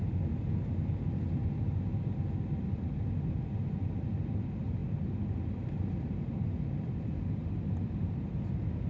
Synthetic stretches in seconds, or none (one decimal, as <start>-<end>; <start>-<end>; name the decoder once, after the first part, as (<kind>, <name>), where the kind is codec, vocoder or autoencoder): none